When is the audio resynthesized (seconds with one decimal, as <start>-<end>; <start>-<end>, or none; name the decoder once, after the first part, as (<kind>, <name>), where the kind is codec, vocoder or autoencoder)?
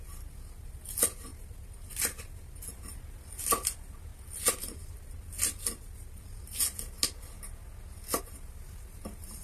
none